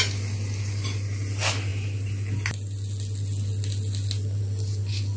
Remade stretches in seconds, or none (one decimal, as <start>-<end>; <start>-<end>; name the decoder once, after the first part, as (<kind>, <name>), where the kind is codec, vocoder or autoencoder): none